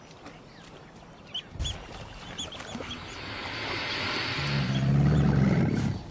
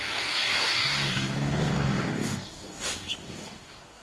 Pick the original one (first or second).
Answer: first